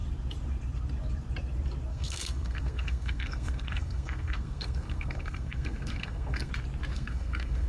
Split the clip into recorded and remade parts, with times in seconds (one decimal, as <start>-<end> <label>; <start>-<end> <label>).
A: 0.0-1.9 recorded; 1.9-6.5 remade; 6.5-6.9 recorded; 6.9-7.7 remade